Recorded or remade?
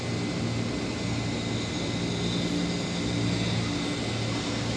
recorded